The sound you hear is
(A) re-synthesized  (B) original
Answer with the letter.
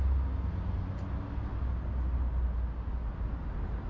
B